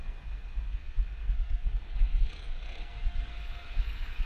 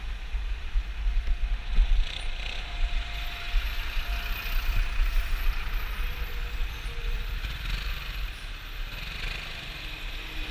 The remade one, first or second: first